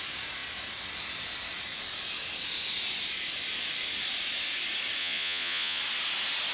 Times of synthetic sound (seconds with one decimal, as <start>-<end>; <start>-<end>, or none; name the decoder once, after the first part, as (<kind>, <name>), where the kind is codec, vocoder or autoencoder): 5.0-5.8 (vocoder, Vocos)